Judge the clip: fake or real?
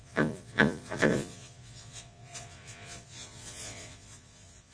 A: fake